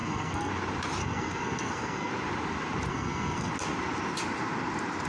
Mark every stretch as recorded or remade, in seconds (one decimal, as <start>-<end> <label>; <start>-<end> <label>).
0.0-0.5 remade; 0.5-1.0 recorded; 1.0-2.1 remade; 2.1-2.9 recorded; 2.9-3.5 remade; 3.5-5.1 recorded